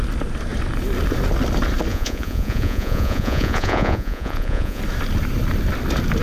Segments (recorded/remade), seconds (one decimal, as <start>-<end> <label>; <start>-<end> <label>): 0.0-1.9 recorded; 1.9-4.8 remade; 4.8-6.2 recorded